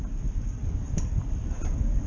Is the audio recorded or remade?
recorded